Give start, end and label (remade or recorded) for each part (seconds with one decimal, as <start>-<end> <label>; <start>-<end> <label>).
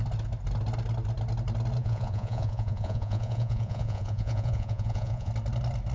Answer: 0.0-1.8 recorded; 1.8-5.3 remade; 5.3-5.9 recorded